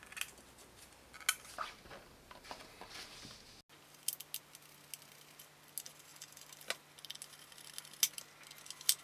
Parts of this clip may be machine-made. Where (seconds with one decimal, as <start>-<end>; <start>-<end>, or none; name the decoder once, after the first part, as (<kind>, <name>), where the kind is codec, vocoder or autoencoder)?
none